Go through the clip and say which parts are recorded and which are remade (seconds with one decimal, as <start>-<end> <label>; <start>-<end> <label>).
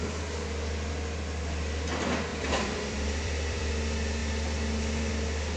0.0-2.3 recorded; 2.3-3.7 remade; 3.7-5.6 recorded